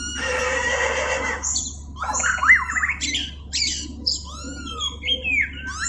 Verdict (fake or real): real